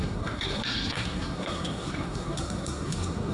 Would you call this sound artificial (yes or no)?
yes